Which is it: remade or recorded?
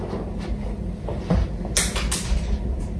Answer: recorded